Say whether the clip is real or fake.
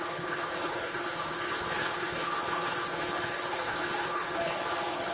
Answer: fake